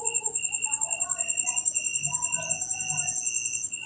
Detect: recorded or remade recorded